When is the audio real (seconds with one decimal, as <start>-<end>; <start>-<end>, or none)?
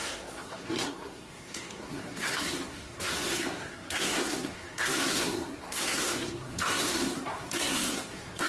none